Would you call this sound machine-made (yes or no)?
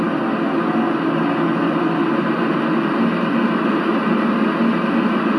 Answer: no